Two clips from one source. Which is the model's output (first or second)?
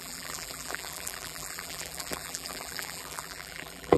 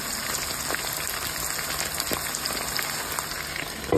first